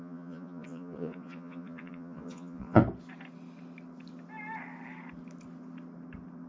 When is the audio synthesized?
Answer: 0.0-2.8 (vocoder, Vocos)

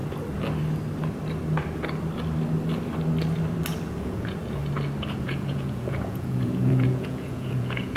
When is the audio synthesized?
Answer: 4.0-4.6 (vocoder, Vocos); 5.2-8.0